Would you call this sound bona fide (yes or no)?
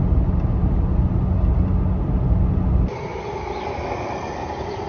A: yes